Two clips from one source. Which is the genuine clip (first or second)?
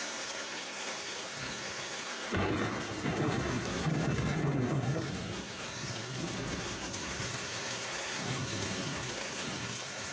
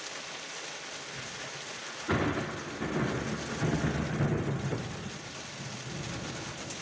second